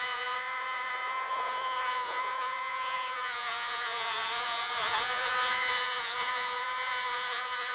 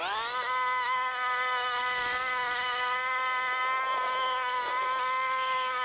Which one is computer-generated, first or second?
first